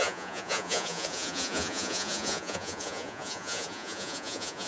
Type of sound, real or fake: fake